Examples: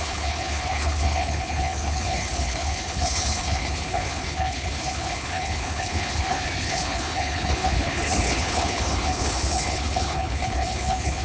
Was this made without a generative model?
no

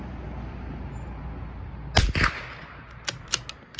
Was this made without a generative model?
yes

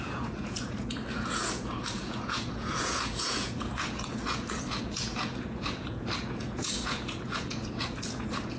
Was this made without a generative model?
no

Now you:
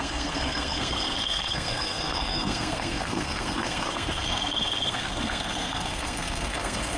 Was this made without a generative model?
no